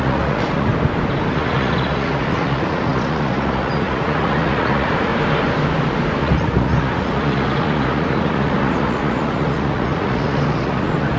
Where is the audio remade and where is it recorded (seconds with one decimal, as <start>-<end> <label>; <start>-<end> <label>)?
0.0-0.7 remade; 0.7-1.3 recorded; 1.3-5.1 remade; 5.1-6.2 recorded; 6.2-11.2 remade